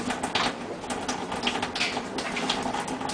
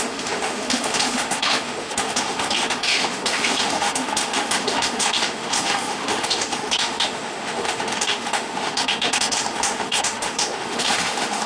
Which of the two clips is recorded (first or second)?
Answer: first